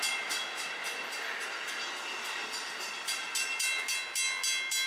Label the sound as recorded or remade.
recorded